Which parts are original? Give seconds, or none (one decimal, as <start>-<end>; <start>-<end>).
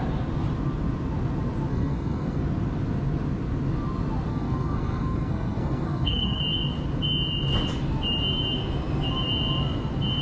0.0-1.7; 2.4-4.3; 6.4-10.2